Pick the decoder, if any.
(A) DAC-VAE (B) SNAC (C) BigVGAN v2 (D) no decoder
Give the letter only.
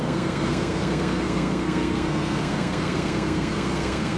B